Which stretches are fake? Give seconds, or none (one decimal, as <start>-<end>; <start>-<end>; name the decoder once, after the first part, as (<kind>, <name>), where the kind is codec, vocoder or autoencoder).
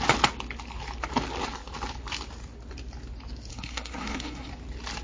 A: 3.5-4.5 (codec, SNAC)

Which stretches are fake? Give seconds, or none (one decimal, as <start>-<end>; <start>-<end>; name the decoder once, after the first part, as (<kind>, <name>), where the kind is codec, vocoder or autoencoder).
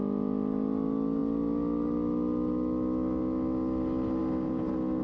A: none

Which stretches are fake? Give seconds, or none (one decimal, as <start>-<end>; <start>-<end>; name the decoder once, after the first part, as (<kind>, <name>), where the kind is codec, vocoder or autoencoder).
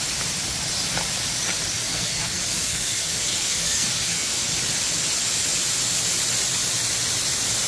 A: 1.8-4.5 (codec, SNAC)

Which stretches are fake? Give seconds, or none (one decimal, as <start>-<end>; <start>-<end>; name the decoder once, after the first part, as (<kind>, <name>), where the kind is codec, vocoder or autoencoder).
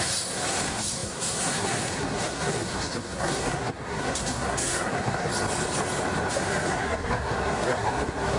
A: 0.0-5.3 (codec, SNAC); 6.3-8.4